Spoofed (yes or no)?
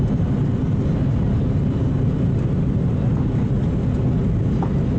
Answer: no